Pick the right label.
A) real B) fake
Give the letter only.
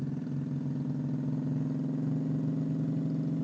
A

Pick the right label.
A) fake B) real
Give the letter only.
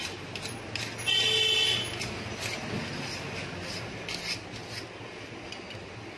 B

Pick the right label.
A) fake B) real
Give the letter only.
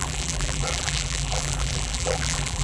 A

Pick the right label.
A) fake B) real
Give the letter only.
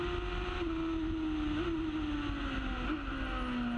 B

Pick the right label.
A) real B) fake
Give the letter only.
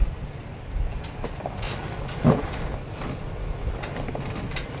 A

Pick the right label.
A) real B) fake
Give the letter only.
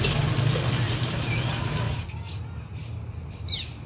A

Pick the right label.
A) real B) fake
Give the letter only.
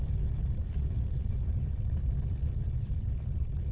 A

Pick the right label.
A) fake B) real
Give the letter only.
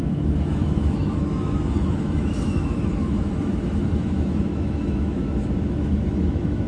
A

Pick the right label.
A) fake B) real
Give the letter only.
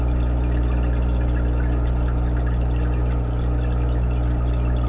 B